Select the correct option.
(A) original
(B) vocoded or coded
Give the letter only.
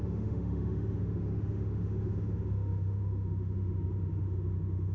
B